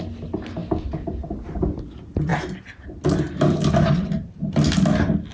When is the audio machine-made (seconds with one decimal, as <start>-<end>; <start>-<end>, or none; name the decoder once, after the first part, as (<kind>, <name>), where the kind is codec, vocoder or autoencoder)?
none